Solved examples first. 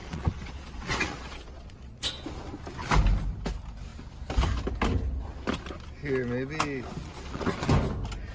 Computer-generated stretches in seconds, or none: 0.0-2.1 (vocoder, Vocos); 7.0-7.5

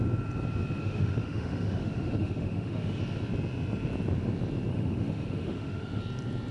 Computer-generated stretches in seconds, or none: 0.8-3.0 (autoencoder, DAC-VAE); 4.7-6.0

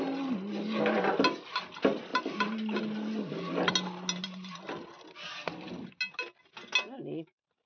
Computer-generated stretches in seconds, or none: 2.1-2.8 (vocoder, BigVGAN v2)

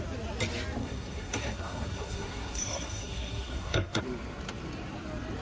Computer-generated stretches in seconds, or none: 0.8-4.0 (codec, SNAC)

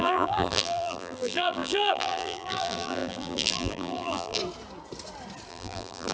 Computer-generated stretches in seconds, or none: 0.0-4.4 (vocoder, BigVGAN v2); 5.5-6.1

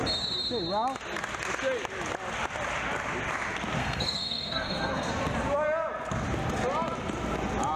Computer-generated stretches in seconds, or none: 3.8-5.1 (codec, SNAC)